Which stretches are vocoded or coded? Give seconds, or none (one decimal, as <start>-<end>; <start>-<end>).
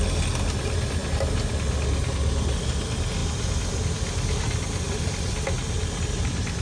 none